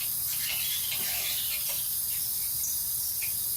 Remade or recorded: recorded